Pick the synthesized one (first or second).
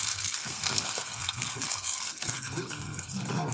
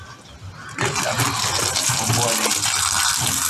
first